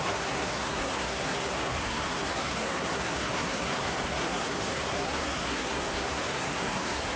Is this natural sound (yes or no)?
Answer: no